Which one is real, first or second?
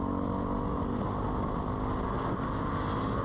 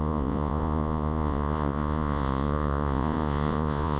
first